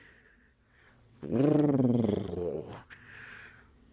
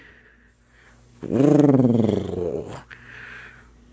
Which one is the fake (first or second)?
first